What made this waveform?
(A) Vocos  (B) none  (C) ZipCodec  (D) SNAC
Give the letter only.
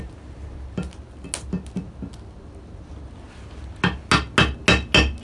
B